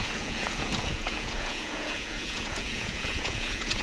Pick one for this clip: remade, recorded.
remade